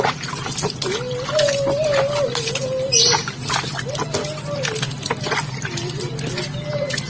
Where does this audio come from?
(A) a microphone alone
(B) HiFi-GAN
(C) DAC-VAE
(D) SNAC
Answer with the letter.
A